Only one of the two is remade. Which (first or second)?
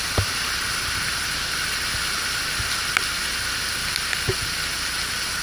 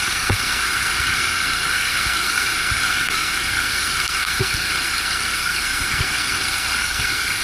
second